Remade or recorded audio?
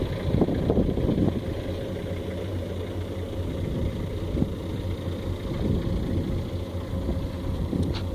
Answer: recorded